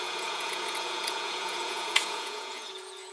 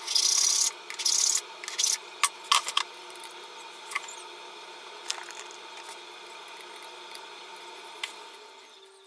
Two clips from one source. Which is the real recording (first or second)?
second